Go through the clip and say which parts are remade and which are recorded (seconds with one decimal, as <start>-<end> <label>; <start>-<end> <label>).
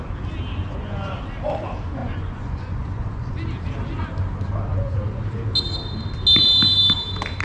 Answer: 0.0-0.6 recorded; 0.6-1.2 remade; 1.2-2.0 recorded; 2.0-3.3 remade; 3.3-4.7 recorded; 4.7-5.2 remade; 5.2-7.4 recorded